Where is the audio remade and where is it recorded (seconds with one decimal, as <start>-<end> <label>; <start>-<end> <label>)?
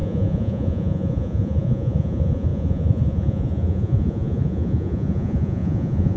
0.0-6.2 remade